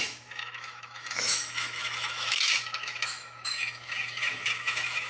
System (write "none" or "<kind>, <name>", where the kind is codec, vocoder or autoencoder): autoencoder, DAC-VAE